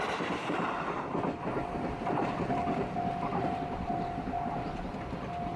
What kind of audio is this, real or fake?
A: real